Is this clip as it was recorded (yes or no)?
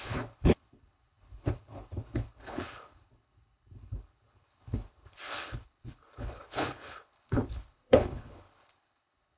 no